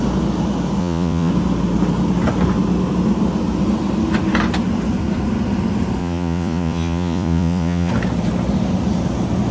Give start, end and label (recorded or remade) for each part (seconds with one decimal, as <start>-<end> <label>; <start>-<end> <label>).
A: 0.0-0.8 recorded; 0.8-1.3 remade; 1.3-6.0 recorded; 6.0-7.9 remade; 7.9-9.5 recorded